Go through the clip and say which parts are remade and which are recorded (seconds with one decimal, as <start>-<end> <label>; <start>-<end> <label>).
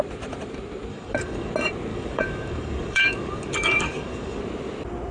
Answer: 0.0-0.9 recorded; 0.9-1.5 remade; 1.5-1.9 recorded; 1.9-4.4 remade; 4.4-5.1 recorded